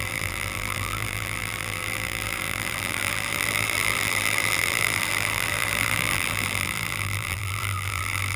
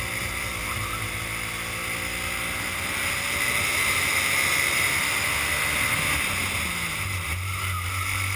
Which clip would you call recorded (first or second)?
second